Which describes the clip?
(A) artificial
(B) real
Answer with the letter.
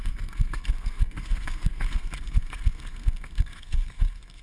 A